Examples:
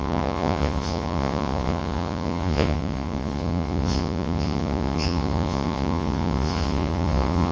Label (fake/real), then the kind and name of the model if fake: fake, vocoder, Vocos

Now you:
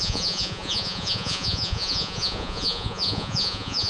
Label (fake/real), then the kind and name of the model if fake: fake, vocoder, Vocos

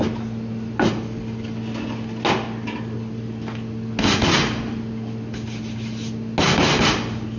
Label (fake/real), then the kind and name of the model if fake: real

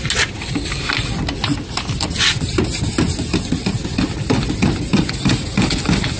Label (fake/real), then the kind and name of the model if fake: real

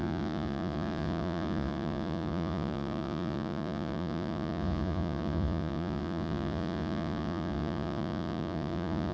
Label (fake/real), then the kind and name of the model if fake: fake, vocoder, Vocos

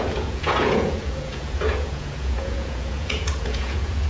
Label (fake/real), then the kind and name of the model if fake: fake, vocoder, Vocos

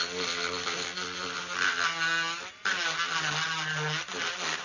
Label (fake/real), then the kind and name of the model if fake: real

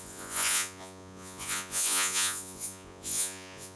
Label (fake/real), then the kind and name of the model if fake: fake, vocoder, Vocos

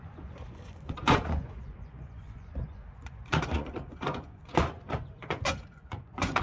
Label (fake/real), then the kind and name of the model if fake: fake, vocoder, Vocos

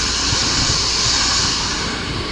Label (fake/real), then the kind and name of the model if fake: real